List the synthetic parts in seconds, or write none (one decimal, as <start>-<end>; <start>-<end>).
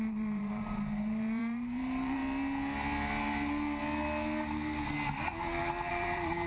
0.0-2.2; 5.9-6.5